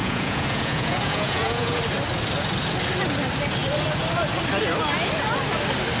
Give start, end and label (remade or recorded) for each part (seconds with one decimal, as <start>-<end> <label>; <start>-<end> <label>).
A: 0.0-1.8 remade; 1.8-6.0 recorded